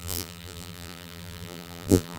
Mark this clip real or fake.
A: fake